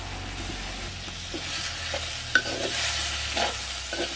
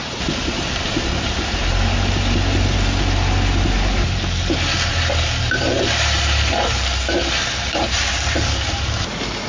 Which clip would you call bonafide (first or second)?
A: first